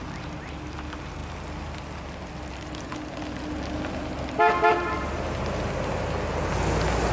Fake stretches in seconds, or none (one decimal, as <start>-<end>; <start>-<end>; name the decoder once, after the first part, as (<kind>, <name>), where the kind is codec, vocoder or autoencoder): none